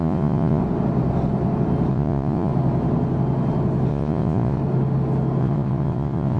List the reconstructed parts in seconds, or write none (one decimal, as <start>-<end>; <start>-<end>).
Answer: 0.0-0.6; 1.9-2.5; 3.9-4.6; 5.4-6.4